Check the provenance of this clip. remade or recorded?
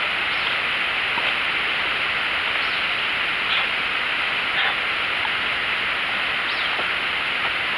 recorded